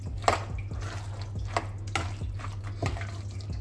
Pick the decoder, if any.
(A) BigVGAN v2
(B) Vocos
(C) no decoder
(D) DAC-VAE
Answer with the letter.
C